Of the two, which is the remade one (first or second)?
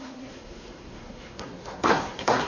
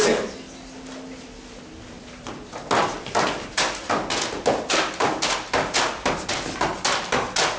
first